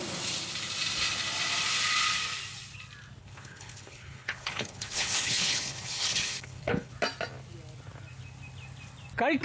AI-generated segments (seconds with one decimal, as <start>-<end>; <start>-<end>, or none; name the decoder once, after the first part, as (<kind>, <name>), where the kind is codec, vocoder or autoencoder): 3.2-6.9 (codec, HILCodec)